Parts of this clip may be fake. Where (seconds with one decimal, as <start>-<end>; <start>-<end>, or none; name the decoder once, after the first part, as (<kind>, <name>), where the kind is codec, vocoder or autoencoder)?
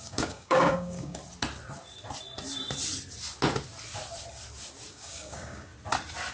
0.0-1.2 (codec, DAC); 4.9-5.7